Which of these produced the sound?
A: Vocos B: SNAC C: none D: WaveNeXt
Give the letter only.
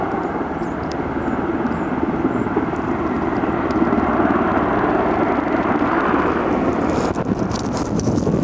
C